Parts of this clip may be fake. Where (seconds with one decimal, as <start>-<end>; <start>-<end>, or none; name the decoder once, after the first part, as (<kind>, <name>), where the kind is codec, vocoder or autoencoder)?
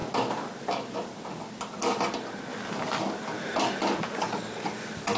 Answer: none